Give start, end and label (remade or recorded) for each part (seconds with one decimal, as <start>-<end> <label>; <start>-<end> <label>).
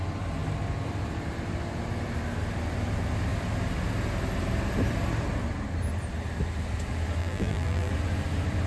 0.0-7.2 recorded; 7.2-7.9 remade; 7.9-8.7 recorded